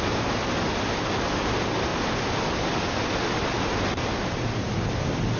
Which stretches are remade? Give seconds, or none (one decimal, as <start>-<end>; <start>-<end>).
none